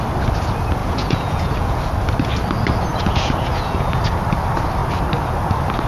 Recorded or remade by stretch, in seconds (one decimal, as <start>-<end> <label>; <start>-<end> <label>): 0.0-0.8 recorded; 0.8-1.8 remade; 1.8-2.9 recorded; 2.9-4.0 remade; 4.0-5.9 recorded